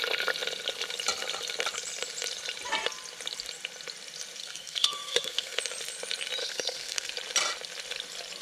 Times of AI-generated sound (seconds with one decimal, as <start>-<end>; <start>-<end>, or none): 4.4-5.6; 6.4-7.1